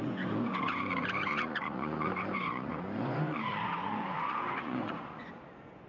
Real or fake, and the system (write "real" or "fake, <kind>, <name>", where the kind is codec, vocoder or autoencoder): fake, vocoder, Vocos